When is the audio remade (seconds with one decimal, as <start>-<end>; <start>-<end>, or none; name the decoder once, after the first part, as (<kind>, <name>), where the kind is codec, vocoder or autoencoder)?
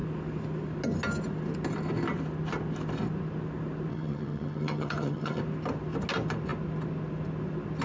3.9-5.4 (vocoder, HiFi-GAN)